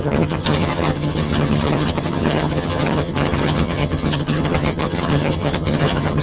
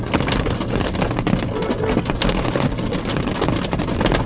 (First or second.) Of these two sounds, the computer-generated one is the first